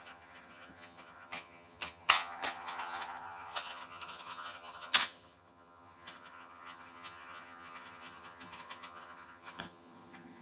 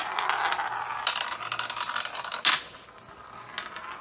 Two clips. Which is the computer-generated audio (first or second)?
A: first